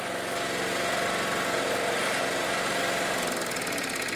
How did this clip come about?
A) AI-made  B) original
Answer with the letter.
B